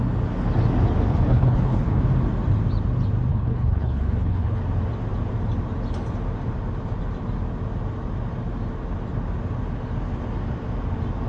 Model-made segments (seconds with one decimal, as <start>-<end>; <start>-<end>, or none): 1.1-2.0; 3.3-4.6